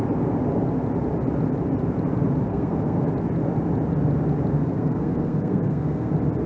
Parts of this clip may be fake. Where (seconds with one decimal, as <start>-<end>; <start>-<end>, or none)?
2.5-3.1; 4.5-6.1